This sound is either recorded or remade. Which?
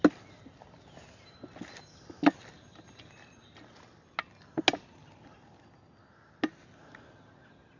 recorded